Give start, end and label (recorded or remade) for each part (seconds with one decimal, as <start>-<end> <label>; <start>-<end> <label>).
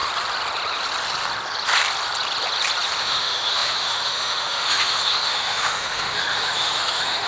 0.0-3.0 recorded; 3.0-7.3 remade